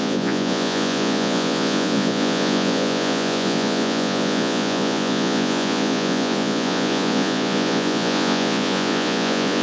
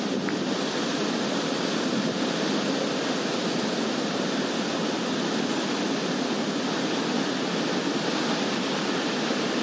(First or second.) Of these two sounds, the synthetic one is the first